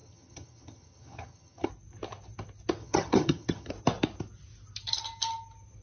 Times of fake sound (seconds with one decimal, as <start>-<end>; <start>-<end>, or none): 0.0-1.7; 2.8-3.7